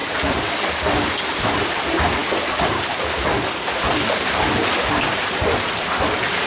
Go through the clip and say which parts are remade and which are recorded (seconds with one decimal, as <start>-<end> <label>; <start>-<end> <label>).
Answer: 0.0-6.5 remade